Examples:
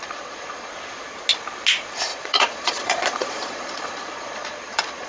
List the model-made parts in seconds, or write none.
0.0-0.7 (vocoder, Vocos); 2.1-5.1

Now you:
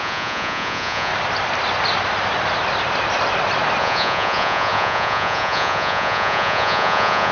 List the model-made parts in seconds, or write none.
0.0-1.1 (vocoder, Vocos); 3.8-7.3

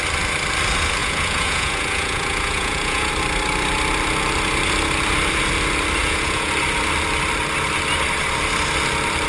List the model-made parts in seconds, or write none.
1.0-3.1 (vocoder, Vocos); 6.0-6.5

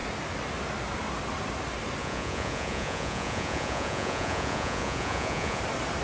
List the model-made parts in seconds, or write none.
2.0-5.6 (vocoder, Vocos)